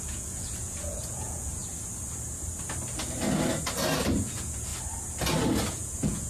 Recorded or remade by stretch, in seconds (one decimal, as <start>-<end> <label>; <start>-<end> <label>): 0.0-1.6 remade; 1.6-4.1 recorded; 4.1-4.7 remade; 4.7-5.8 recorded; 5.8-6.3 remade